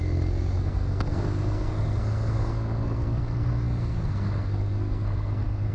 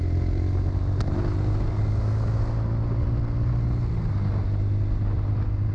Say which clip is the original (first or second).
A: second